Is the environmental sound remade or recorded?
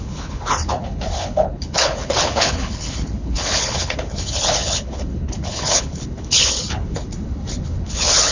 remade